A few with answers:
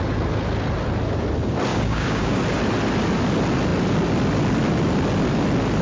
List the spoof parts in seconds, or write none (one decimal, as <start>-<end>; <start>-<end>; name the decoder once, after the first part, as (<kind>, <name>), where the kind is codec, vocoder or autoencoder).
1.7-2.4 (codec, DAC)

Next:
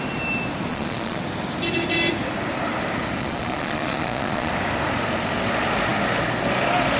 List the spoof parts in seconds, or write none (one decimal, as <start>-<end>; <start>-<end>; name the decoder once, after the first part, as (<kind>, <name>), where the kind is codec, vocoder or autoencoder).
0.7-1.2 (vocoder, Vocos); 3.2-4.5

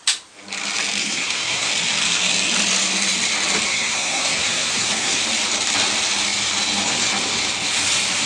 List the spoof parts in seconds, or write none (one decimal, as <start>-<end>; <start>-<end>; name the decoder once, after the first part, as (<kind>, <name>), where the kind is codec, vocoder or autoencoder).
1.0-1.7 (codec, SNAC); 3.7-5.2